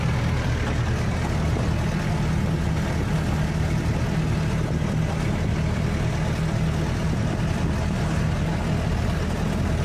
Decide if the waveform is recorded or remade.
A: recorded